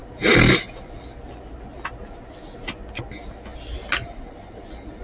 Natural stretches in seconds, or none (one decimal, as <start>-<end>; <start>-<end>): 0.0-5.0